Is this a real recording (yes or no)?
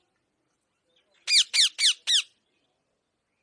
yes